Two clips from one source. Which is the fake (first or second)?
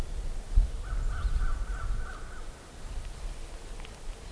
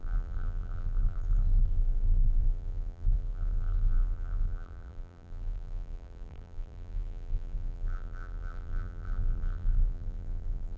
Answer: second